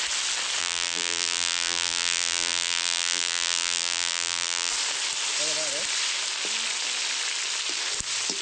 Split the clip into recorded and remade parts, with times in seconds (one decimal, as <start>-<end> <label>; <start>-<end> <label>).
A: 0.0-0.6 recorded; 0.6-4.7 remade; 4.7-8.4 recorded